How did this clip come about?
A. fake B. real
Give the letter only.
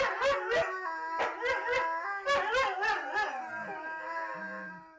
B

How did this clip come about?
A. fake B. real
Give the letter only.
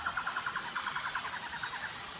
B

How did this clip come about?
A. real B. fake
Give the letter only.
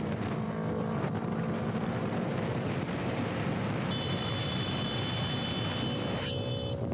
A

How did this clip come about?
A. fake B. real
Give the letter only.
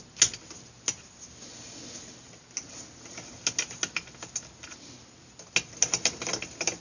B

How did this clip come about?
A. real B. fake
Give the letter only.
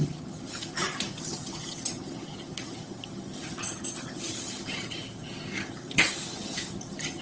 B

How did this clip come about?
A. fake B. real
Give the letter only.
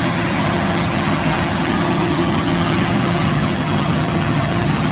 A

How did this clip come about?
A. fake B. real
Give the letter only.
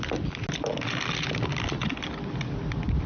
B